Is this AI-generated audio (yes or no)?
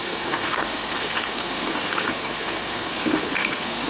yes